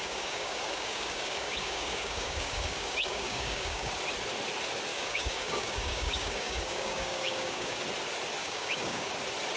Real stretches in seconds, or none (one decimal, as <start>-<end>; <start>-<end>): 3.9-4.9; 7.8-8.4; 9.1-9.6